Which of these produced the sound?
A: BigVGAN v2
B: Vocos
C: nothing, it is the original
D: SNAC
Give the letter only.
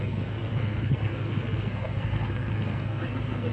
D